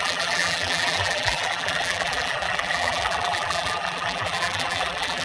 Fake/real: fake